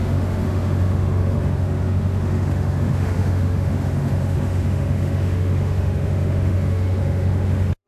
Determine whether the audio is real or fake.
fake